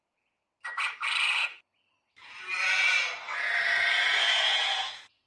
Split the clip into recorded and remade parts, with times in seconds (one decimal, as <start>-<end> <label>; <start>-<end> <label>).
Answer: 0.0-0.4 remade; 0.4-3.6 recorded; 3.6-5.3 remade